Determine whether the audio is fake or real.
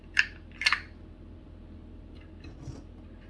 real